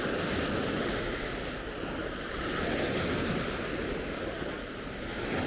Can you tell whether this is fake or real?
real